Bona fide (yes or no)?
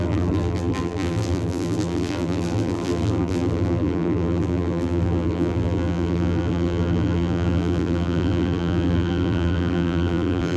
no